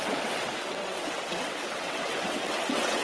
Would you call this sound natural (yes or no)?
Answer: no